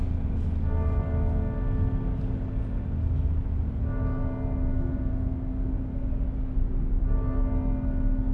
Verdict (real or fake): real